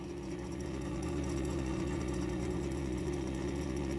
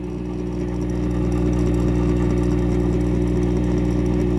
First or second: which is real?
second